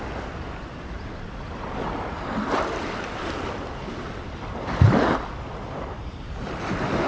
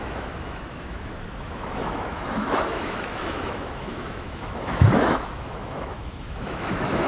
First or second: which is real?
first